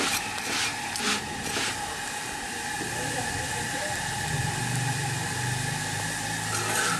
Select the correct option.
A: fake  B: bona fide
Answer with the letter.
B